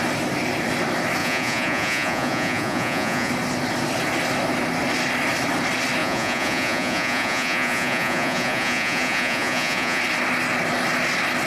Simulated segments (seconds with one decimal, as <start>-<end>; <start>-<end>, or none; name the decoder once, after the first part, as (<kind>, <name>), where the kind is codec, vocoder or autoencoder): 1.2-3.3 (vocoder, Vocos); 6.0-10.0